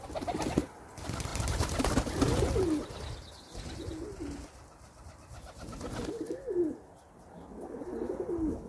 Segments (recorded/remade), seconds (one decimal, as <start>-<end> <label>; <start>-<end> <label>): 0.0-1.3 recorded; 1.3-1.9 remade; 1.9-8.7 recorded